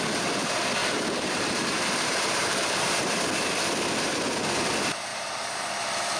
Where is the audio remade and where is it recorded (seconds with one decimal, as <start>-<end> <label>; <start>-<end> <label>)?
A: 0.0-0.8 recorded; 0.8-3.1 remade; 3.1-5.1 recorded; 5.1-6.2 remade